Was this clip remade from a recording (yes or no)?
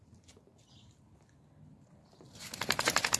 no